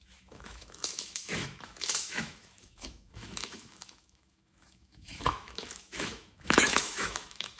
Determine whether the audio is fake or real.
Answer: fake